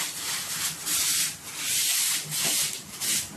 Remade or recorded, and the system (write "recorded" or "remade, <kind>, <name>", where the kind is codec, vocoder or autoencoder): recorded